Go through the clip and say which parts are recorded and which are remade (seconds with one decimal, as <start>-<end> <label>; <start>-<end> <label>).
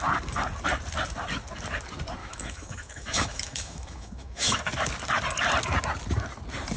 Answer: 0.0-2.2 recorded; 2.2-4.6 remade; 4.6-6.8 recorded